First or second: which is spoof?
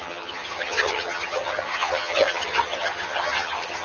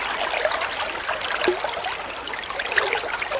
first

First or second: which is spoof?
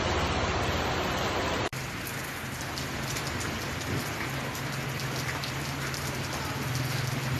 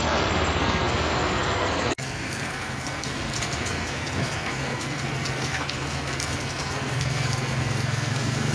second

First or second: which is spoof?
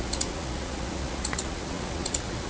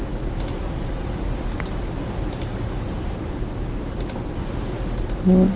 first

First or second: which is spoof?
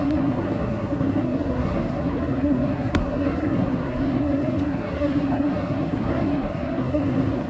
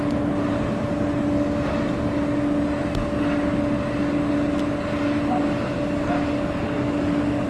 first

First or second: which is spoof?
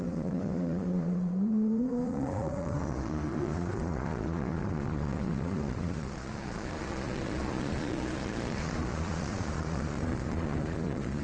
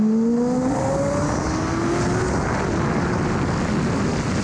first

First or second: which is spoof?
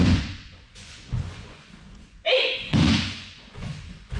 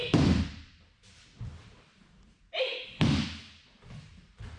first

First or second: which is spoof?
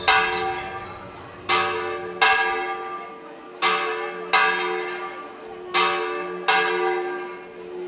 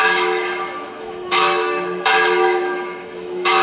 second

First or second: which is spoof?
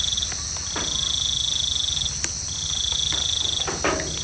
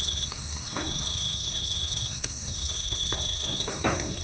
second